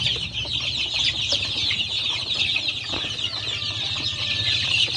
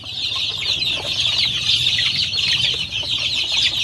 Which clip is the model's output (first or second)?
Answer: second